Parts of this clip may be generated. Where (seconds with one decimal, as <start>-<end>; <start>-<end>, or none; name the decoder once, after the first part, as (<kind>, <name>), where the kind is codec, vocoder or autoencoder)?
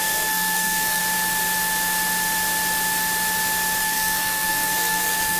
0.0-1.0 (codec, SNAC); 3.8-5.4